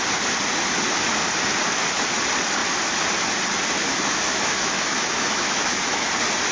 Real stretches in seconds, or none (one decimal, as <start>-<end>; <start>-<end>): 0.0-3.8; 6.1-6.5